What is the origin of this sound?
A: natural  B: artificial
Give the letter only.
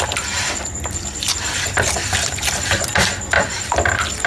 B